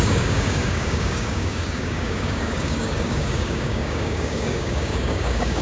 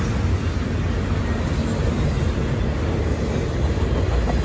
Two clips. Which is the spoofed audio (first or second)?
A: first